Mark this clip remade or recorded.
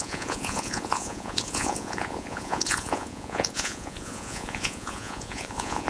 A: remade